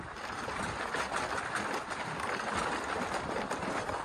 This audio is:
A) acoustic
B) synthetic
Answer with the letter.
A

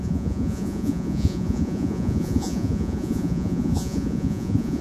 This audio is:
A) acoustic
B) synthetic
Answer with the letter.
B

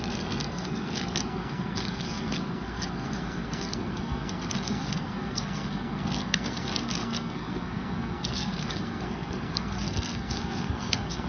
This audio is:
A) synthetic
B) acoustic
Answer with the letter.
A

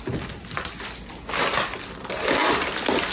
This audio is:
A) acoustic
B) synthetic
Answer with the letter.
A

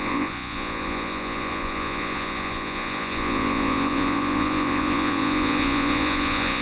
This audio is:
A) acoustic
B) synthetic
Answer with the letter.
B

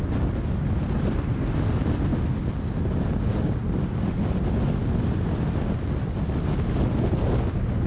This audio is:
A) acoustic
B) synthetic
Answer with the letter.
A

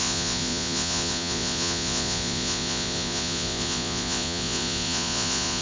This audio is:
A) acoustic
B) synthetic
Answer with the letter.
B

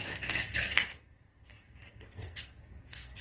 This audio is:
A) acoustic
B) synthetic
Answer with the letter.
B